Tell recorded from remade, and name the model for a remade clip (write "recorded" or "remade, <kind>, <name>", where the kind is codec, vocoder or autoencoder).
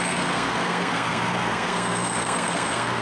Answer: remade, codec, SNAC